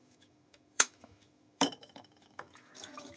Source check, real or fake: fake